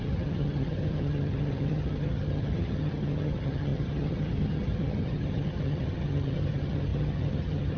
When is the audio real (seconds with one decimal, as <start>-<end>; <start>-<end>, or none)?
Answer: none